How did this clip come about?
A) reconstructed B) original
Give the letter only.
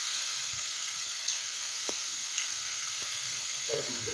A